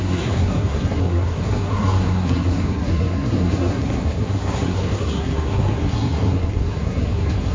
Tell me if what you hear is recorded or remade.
remade